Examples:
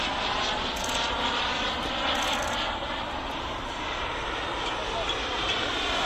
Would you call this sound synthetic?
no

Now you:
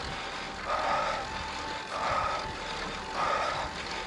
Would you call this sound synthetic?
no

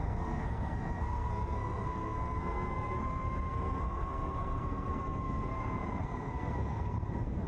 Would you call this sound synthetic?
yes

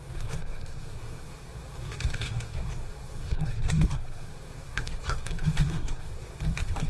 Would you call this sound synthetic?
yes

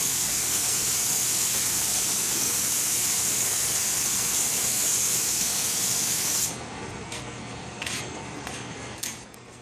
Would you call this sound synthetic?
yes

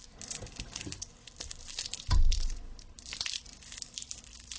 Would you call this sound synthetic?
no